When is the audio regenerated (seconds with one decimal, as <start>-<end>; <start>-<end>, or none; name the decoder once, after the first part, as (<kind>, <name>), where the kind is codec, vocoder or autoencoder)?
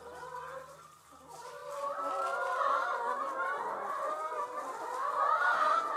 none